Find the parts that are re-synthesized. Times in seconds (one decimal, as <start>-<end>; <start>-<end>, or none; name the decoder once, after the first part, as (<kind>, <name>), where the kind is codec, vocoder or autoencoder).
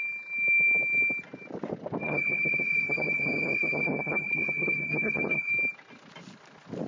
2.0-5.5 (vocoder, HiFi-GAN)